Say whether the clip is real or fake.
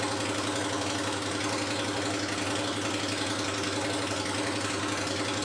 real